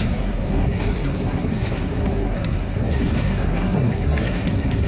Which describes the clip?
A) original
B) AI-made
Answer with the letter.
B